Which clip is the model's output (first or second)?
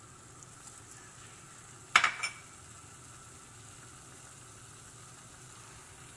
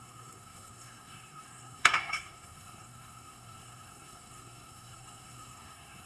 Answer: second